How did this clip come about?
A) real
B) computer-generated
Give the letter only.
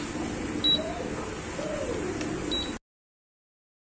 A